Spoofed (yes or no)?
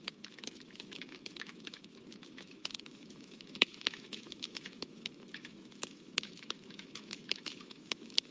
yes